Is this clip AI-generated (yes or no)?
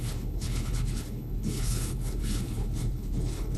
yes